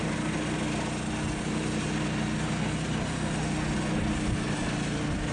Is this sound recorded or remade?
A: recorded